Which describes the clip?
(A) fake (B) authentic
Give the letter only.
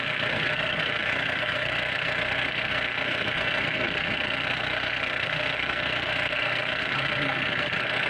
A